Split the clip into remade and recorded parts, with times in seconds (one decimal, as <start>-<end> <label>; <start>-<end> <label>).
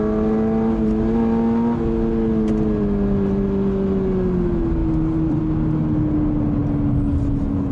0.0-4.8 recorded; 4.8-5.4 remade; 5.4-7.7 recorded